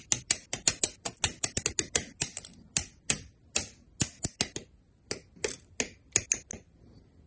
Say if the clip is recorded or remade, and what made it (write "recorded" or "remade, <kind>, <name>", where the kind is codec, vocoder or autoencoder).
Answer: recorded